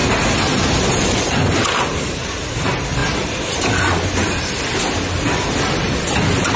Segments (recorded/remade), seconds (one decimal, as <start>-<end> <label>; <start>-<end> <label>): 0.0-6.6 recorded